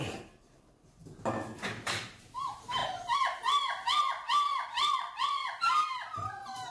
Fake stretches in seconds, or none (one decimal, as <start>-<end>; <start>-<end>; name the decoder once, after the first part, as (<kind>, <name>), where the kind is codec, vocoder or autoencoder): 0.0-1.0 (vocoder, BigVGAN v2); 1.7-2.8; 6.3-6.7